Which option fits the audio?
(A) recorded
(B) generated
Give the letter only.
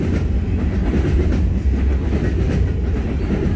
A